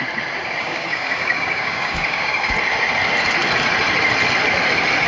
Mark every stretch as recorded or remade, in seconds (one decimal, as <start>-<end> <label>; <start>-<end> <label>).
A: 0.0-0.6 recorded; 0.6-2.5 remade; 2.5-5.1 recorded